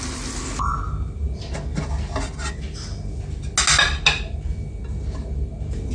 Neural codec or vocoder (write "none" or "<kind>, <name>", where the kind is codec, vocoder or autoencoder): none